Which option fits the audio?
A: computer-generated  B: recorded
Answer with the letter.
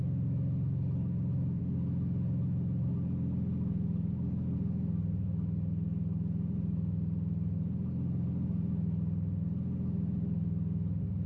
B